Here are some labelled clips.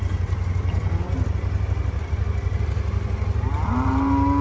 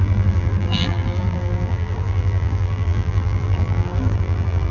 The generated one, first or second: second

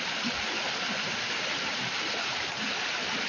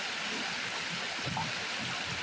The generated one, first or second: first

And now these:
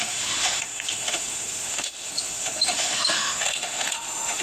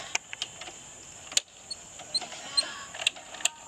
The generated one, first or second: first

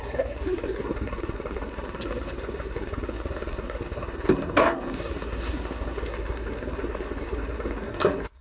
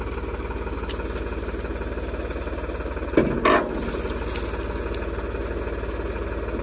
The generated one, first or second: first